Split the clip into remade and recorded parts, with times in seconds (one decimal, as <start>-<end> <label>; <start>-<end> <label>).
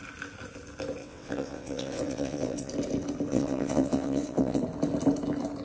0.0-1.0 recorded; 1.0-2.7 remade; 2.7-3.3 recorded; 3.3-4.6 remade; 4.6-5.6 recorded